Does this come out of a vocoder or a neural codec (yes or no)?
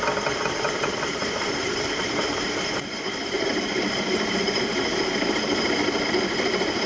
yes